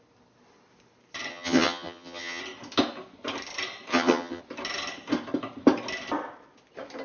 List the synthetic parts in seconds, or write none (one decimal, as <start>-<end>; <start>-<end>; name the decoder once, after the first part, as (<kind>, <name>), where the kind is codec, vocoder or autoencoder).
1.3-2.4 (vocoder, HiFi-GAN); 3.9-4.4